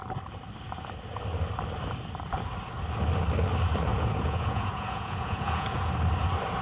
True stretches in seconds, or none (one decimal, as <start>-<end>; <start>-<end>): 0.0-3.9; 5.9-6.6